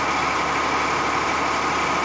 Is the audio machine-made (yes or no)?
no